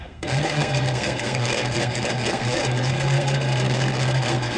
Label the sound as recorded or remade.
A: remade